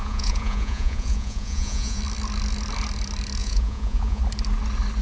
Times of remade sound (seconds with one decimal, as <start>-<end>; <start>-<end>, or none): 0.0-2.0; 3.4-4.2